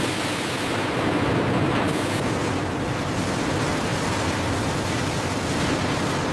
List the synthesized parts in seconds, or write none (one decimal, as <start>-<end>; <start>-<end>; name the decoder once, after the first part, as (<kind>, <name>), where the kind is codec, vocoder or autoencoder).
none